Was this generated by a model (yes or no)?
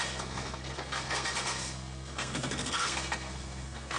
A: yes